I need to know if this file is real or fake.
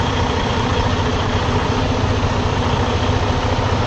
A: real